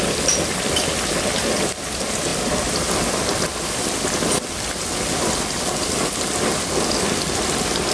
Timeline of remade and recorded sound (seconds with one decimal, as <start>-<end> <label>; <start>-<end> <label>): 0.0-7.9 recorded